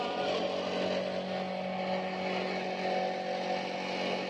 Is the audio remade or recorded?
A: recorded